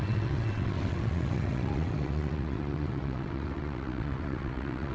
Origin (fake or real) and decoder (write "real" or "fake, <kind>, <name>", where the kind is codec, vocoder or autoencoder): fake, vocoder, WaveNeXt